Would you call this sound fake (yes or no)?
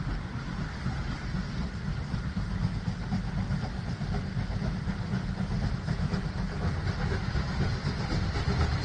no